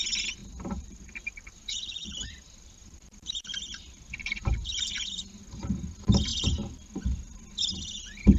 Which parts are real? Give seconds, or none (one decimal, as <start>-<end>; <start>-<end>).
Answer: 0.0-0.4; 5.4-8.4

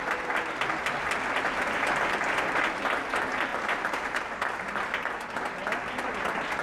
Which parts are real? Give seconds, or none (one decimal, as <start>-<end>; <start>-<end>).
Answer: 0.0-3.5; 4.0-6.6

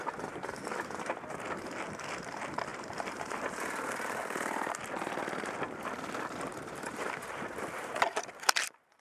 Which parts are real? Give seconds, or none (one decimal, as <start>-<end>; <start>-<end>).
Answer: 0.0-2.7; 3.4-6.5; 7.3-9.0

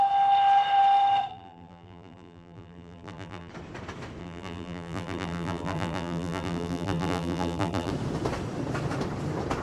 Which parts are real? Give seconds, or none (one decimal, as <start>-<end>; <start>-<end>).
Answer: 0.0-1.3; 3.5-4.2; 7.9-9.6